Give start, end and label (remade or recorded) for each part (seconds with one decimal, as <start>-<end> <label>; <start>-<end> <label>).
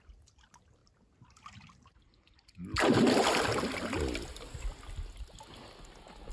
0.0-6.3 recorded